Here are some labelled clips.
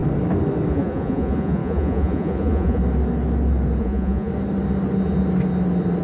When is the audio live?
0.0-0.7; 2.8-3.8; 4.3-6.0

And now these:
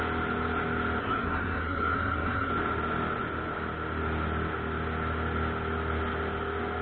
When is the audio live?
0.0-1.0; 2.5-6.8

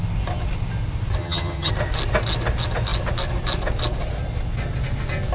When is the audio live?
0.0-1.2; 1.7-5.3

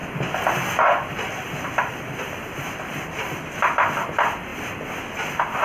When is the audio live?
0.0-4.5; 5.0-5.6

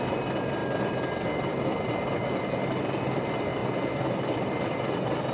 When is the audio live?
0.0-5.3